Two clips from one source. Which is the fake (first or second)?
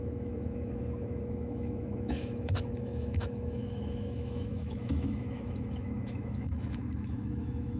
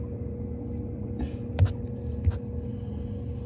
first